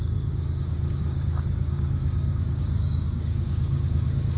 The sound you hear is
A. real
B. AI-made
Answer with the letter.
B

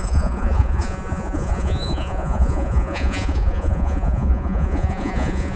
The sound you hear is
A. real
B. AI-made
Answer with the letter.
B